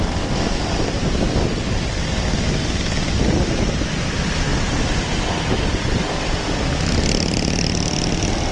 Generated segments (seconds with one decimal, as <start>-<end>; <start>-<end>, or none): 4.5-6.7

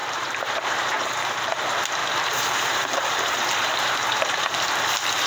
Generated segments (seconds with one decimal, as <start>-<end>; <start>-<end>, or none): 0.0-1.3; 2.0-4.6

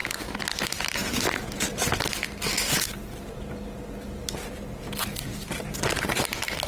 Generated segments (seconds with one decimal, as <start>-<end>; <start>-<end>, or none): none

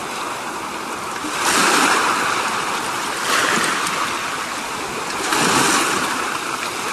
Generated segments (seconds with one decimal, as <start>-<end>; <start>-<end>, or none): 0.0-5.3

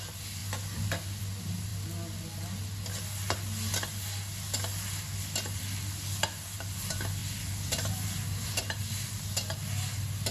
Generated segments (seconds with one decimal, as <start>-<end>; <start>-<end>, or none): none

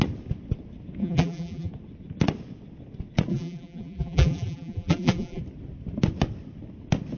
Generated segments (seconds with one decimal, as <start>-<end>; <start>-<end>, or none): 1.0-1.7; 3.3-5.4